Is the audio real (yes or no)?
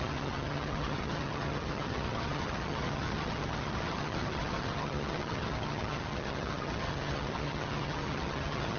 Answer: no